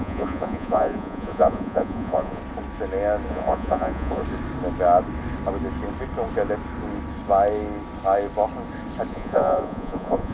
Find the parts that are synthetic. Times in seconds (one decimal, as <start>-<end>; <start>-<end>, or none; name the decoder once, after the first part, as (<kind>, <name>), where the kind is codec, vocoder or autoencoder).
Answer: 0.0-2.4 (vocoder, Vocos); 3.3-4.2; 9.1-10.3